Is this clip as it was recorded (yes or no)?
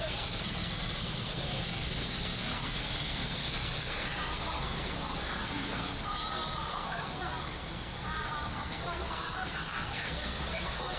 no